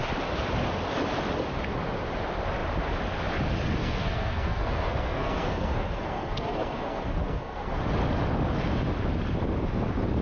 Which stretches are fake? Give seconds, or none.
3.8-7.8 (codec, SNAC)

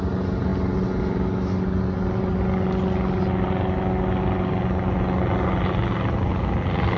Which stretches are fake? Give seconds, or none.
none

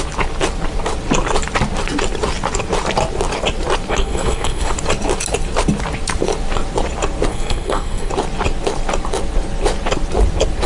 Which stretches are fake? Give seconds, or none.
3.9-4.7 (codec, SNAC); 7.3-8.1